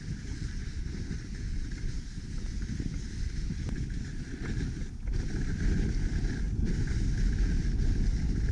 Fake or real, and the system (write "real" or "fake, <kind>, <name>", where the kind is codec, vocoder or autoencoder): real